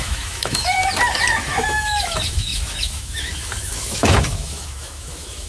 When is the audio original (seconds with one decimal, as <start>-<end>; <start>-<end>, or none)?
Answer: 0.8-1.4